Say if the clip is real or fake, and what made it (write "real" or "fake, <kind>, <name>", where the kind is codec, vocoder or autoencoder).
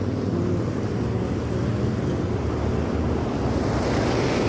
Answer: real